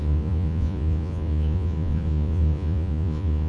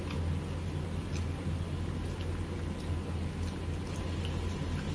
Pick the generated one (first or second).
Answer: first